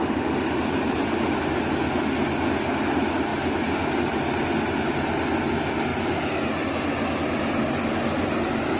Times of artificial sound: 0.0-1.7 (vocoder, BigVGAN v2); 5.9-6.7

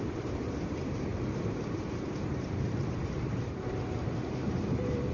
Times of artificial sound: 0.0-5.1 (vocoder, BigVGAN v2)

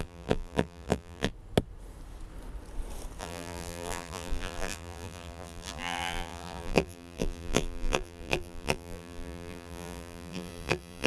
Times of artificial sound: 0.0-1.3 (vocoder, BigVGAN v2); 3.2-11.1

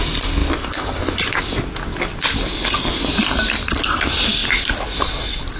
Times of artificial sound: 0.4-1.4 (vocoder, BigVGAN v2); 4.4-5.1